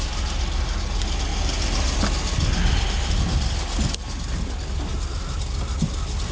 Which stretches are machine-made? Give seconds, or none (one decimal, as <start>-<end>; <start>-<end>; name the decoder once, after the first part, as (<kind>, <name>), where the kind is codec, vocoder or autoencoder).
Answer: none